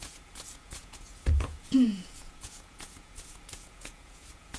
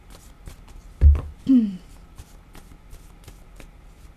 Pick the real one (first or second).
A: second